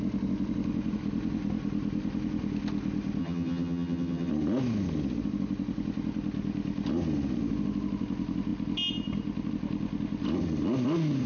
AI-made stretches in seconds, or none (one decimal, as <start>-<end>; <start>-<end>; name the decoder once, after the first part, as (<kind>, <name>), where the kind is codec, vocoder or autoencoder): 3.2-4.3 (vocoder, HiFi-GAN)